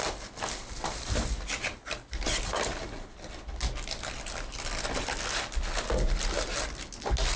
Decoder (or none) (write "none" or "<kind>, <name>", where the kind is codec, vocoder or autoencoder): none